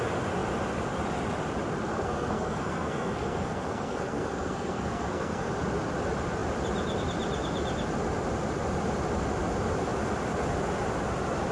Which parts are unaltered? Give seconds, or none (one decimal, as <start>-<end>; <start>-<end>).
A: 0.0-1.9; 5.5-11.5